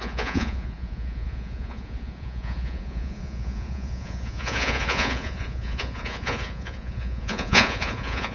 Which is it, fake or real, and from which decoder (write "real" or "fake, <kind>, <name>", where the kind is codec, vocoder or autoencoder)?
fake, vocoder, Vocos